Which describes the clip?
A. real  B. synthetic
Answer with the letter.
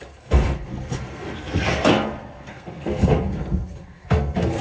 B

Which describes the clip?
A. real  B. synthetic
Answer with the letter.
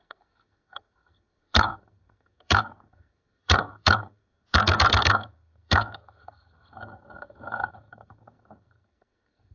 B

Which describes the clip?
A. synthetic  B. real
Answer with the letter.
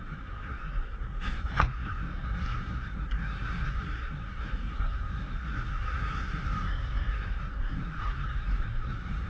A